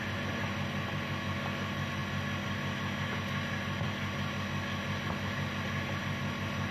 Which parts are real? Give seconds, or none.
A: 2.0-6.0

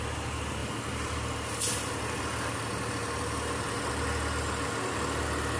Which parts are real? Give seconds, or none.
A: 0.0-0.6; 1.3-3.0; 3.9-5.6

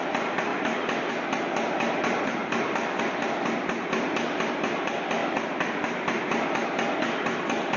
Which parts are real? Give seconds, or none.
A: none